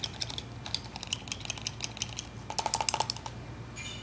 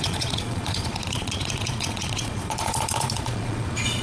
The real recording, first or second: first